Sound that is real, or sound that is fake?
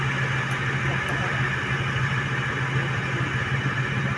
real